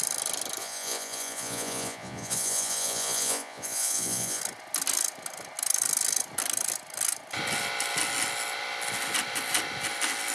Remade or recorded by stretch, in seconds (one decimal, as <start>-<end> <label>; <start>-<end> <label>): 0.0-0.6 recorded; 0.6-4.4 remade; 4.4-10.3 recorded